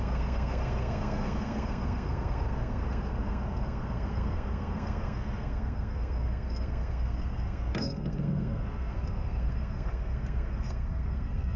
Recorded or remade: remade